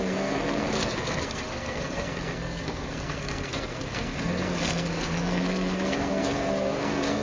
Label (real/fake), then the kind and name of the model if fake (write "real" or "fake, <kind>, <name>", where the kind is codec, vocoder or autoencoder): fake, codec, SNAC